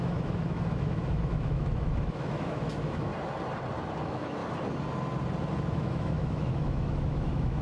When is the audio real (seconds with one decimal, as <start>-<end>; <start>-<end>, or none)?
3.1-4.0; 4.4-5.6